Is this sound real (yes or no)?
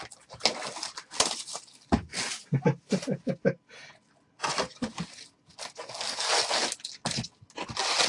yes